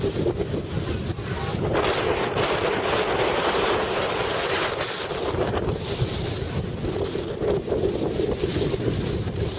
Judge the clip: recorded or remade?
recorded